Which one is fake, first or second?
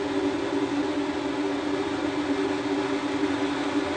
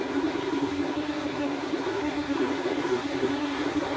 second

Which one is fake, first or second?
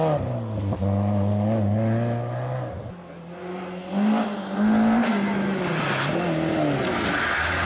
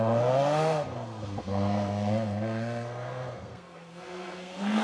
second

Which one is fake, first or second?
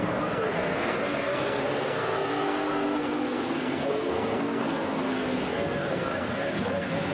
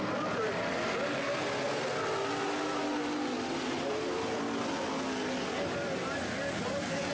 first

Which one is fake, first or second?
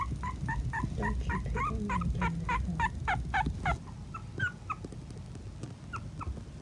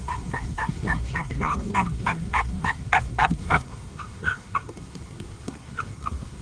second